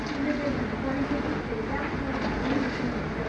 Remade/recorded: recorded